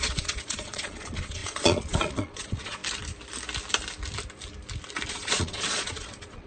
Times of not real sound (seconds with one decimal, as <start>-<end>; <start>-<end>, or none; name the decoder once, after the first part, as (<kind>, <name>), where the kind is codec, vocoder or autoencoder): 0.0-2.8 (vocoder, Vocos); 5.1-6.5